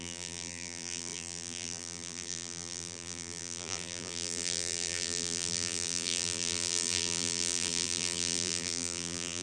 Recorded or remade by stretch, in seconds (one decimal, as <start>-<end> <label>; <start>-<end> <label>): 0.0-9.4 remade